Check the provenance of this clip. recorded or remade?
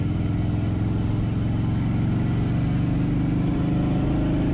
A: recorded